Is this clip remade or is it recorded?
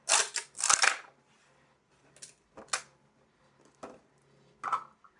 recorded